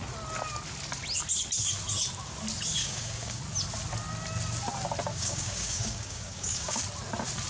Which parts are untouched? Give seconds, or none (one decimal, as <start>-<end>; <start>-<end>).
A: 0.0-2.8; 3.4-5.1; 6.8-7.5